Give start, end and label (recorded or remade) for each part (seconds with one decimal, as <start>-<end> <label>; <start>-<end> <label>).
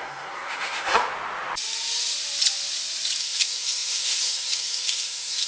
0.0-1.0 remade; 1.0-3.2 recorded; 3.2-5.5 remade